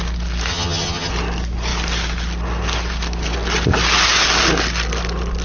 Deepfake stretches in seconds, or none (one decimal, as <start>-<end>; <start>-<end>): 0.5-1.1